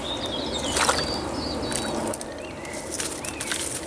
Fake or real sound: real